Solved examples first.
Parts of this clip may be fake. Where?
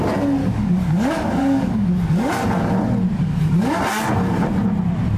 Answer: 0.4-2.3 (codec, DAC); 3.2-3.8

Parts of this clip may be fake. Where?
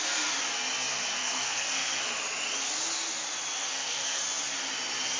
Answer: 1.2-2.0 (codec, SNAC); 3.6-4.2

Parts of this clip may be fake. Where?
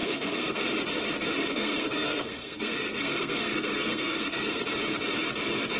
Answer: 0.0-0.6 (codec, SNAC); 1.5-4.6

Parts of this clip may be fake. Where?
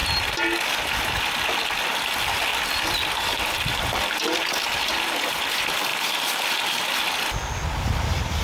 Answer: 2.5-4.5 (vocoder, BigVGAN v2)